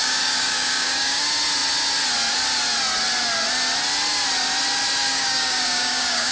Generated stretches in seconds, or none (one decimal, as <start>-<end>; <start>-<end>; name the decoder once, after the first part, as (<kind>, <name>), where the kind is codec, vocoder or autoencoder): 0.0-1.2 (codec, DAC); 5.0-6.3